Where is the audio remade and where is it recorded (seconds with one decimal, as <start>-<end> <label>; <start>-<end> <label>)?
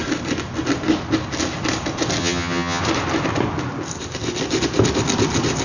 0.0-2.2 recorded; 2.2-2.8 remade; 2.8-5.6 recorded